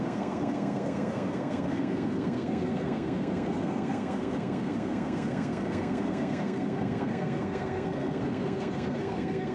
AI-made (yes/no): yes